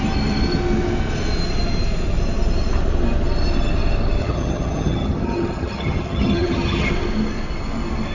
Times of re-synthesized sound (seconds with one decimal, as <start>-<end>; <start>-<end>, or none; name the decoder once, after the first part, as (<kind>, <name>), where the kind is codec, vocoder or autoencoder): 4.2-6.9 (vocoder, HiFi-GAN)